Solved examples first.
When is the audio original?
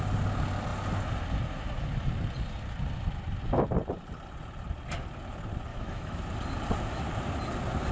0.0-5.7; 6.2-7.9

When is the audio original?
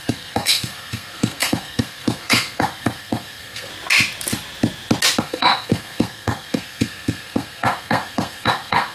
3.7-5.2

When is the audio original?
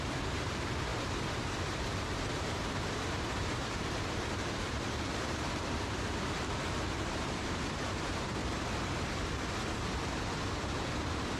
8.4-10.8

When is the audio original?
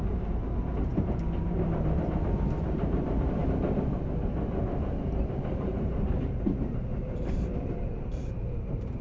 3.4-5.5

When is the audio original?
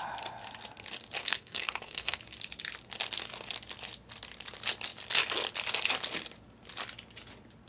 0.0-1.2; 2.2-7.7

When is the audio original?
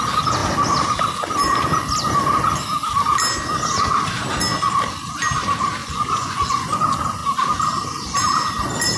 0.0-5.8; 6.8-9.0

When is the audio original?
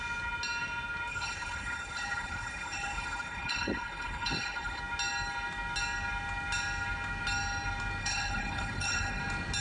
0.0-1.1; 4.8-8.0; 9.2-9.6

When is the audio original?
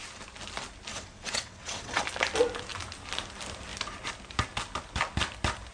0.0-0.9; 2.0-5.7